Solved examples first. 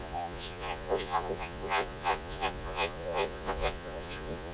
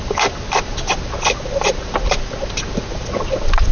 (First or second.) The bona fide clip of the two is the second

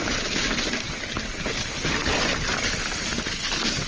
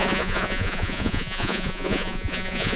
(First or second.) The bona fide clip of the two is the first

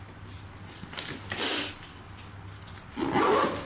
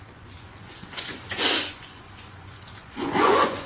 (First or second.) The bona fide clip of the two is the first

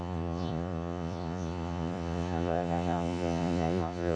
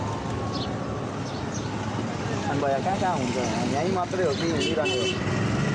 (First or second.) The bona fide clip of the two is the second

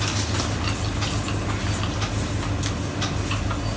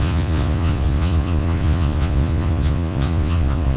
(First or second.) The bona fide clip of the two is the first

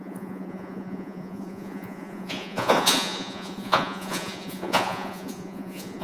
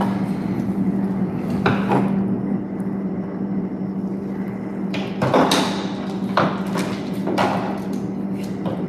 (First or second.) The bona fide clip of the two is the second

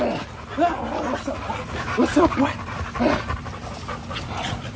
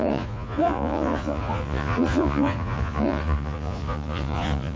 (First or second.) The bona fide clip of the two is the first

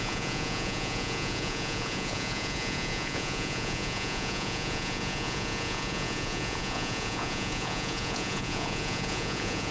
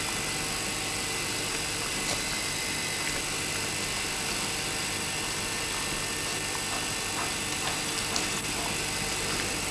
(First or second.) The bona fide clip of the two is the second